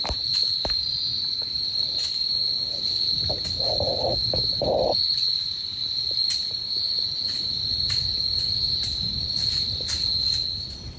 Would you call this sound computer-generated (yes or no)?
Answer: no